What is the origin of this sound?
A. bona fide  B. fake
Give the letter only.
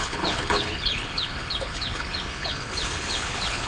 B